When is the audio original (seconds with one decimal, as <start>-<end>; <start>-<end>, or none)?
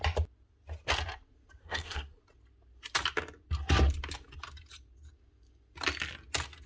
0.0-1.6; 2.2-6.7